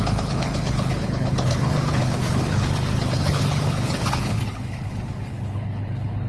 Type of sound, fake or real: fake